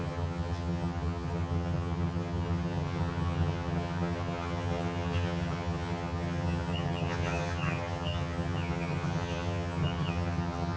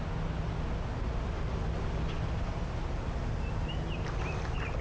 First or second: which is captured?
second